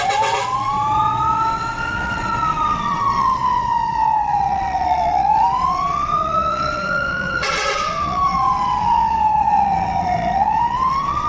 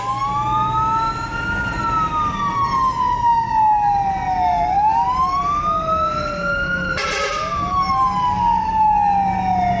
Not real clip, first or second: first